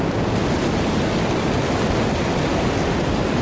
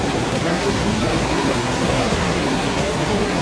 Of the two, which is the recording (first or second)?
first